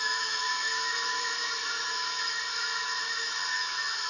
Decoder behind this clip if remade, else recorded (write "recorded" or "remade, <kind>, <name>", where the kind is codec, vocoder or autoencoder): remade, autoencoder, DAC-VAE